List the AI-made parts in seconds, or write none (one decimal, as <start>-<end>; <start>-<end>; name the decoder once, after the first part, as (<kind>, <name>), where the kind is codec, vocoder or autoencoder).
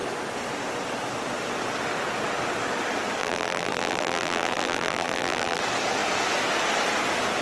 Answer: 3.2-5.6 (vocoder, BigVGAN v2)